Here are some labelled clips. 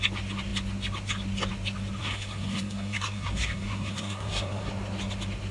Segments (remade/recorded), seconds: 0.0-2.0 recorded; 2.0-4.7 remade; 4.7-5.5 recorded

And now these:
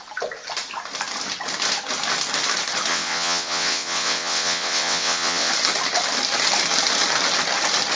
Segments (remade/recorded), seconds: 0.0-2.9 recorded; 2.9-5.5 remade; 5.5-8.0 recorded

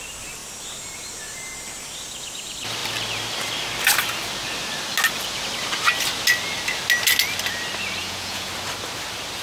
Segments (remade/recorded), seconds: 0.0-8.0 recorded; 8.0-8.5 remade; 8.5-9.4 recorded

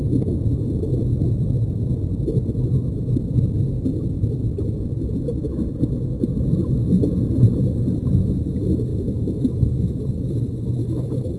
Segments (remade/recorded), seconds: 0.0-8.9 recorded; 8.9-10.0 remade; 10.0-10.8 recorded; 10.8-11.4 remade

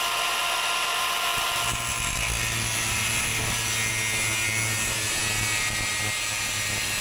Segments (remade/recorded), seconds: 0.0-7.0 recorded

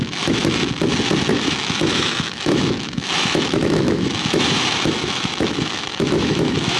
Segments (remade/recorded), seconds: 0.0-0.4 remade; 0.4-1.3 recorded; 1.3-6.8 remade